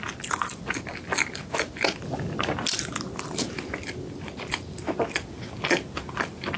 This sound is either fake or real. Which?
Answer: real